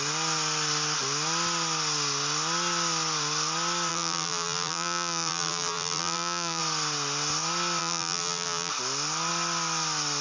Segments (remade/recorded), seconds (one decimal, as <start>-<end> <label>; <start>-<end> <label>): 0.0-3.9 recorded; 3.9-6.6 remade; 6.6-7.8 recorded; 7.8-8.7 remade; 8.7-10.2 recorded